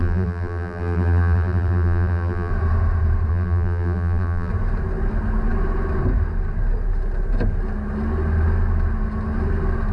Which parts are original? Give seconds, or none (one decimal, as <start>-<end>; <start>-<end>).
2.5-3.3; 4.5-9.9